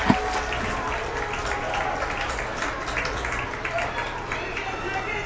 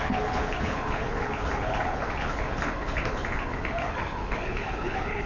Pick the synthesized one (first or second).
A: second